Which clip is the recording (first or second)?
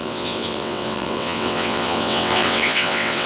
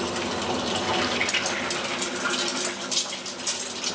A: second